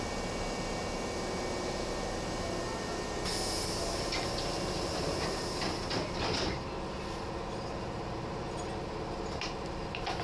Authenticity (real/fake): real